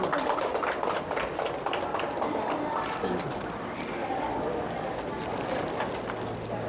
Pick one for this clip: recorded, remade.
recorded